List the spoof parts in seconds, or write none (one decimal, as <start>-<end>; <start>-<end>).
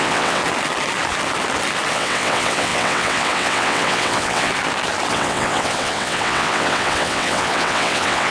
0.0-0.4; 1.9-4.5; 5.1-8.3